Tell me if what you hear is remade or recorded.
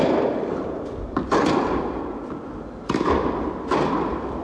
recorded